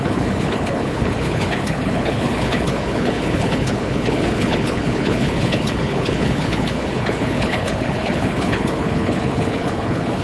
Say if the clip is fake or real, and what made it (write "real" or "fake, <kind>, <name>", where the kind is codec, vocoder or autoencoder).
fake, codec, HILCodec